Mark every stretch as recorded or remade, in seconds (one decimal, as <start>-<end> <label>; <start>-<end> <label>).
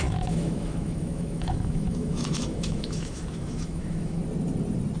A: 0.0-4.2 remade; 4.2-5.0 recorded